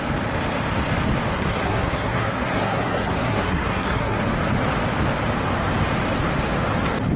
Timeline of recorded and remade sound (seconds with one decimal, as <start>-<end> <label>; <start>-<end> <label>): 0.0-1.3 recorded; 1.3-4.2 remade; 4.2-7.2 recorded